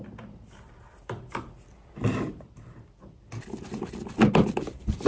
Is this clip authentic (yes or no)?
yes